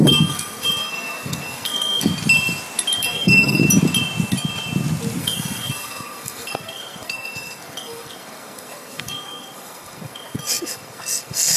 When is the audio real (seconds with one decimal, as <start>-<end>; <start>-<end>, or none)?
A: 2.1-3.0; 3.6-5.2